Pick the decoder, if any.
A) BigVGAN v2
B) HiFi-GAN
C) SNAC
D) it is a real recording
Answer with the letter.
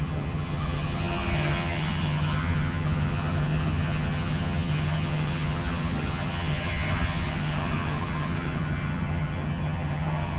B